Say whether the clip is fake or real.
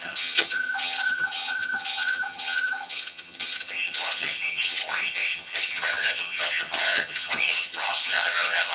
fake